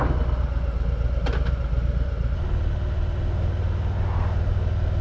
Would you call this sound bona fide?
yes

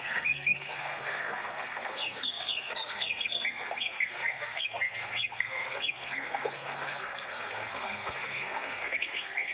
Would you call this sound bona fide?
no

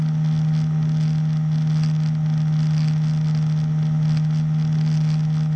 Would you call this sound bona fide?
yes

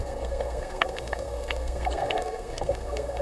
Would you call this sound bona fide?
no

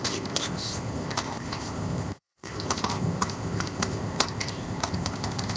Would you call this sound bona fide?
no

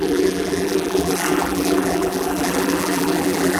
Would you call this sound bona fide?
no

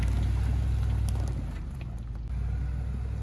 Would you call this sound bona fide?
yes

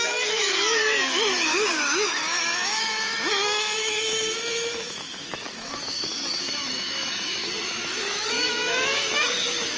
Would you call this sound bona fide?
no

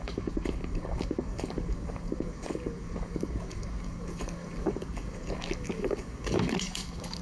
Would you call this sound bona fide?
no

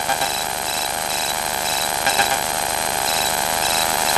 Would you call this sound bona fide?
yes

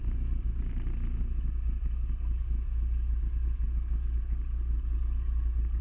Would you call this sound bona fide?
yes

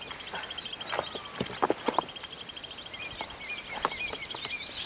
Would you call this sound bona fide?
yes